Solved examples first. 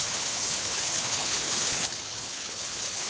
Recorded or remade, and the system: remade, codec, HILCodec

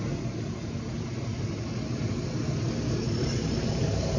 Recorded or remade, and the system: recorded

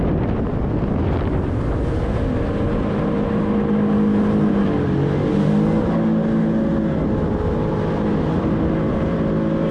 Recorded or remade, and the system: recorded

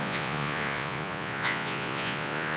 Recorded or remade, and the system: remade, vocoder, Vocos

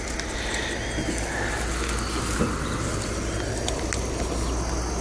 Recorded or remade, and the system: recorded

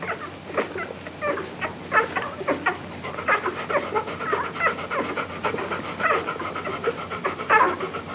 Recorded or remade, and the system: recorded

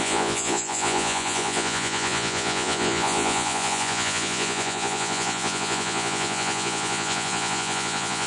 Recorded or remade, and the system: remade, vocoder, Vocos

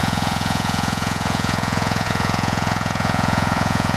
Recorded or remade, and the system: remade, vocoder, Vocos